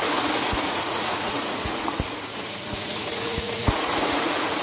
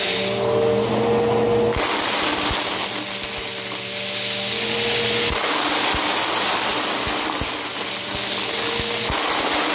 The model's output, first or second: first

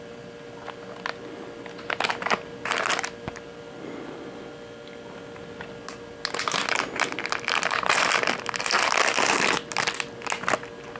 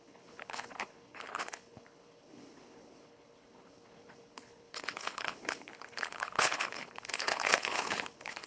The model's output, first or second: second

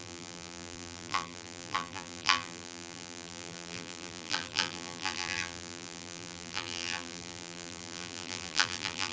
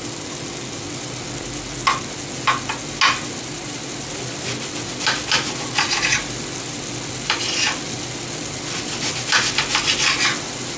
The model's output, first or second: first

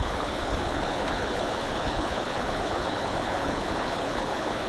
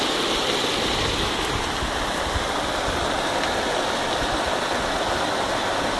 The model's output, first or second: first